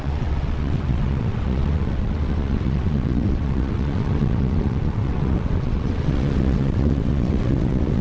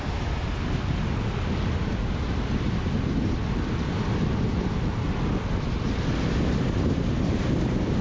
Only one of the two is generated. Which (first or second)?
first